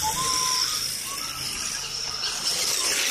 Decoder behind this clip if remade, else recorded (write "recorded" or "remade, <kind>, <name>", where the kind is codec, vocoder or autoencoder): recorded